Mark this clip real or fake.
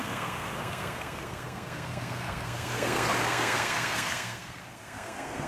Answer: fake